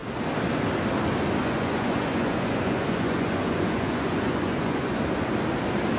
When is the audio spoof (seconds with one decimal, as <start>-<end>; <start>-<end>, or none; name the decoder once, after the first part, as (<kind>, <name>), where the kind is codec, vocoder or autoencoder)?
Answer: 1.4-5.0 (vocoder, Vocos)

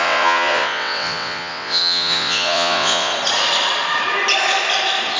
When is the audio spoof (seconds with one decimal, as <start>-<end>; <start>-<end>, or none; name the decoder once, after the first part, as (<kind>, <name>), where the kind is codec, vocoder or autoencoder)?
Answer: 0.0-3.1 (vocoder, WaveNeXt)

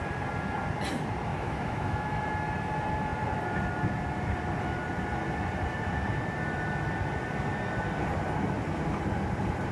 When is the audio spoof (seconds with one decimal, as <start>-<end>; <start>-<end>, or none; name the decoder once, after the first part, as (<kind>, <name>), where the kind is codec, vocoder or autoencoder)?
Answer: 1.3-2.3 (autoencoder, DAC-VAE)

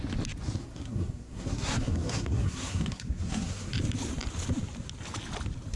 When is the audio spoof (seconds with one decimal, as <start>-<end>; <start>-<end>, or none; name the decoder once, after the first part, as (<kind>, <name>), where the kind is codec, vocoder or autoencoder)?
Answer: 0.6-3.7 (codec, SNAC)

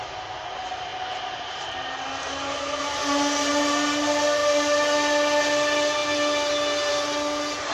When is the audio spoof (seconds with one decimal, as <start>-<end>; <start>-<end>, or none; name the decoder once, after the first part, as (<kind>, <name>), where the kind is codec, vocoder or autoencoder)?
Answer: none

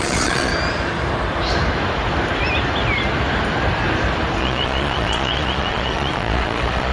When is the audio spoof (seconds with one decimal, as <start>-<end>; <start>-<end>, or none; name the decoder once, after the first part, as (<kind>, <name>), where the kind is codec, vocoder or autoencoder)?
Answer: 0.0-0.5 (vocoder, Vocos); 4.4-6.9

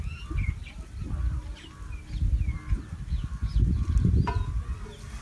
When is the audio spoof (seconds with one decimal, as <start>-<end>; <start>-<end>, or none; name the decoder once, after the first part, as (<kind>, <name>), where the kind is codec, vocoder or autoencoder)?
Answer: none

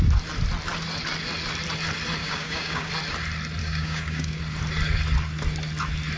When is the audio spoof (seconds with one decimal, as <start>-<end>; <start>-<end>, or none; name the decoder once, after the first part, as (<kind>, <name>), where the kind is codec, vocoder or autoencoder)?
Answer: 2.2-2.9 (codec, DAC); 3.6-4.4